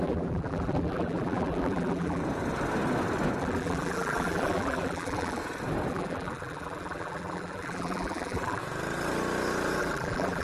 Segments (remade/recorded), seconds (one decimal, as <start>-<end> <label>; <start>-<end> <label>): 0.0-2.2 remade; 2.2-3.4 recorded; 3.4-5.4 remade; 5.4-5.9 recorded; 5.9-8.6 remade; 8.6-9.8 recorded; 9.8-10.4 remade